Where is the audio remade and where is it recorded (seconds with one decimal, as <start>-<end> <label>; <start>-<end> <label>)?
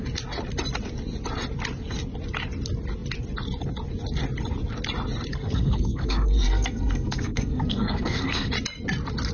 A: 0.0-5.3 recorded; 5.3-8.5 remade; 8.5-9.3 recorded